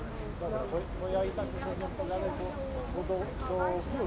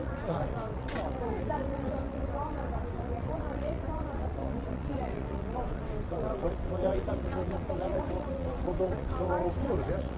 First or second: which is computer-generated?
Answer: second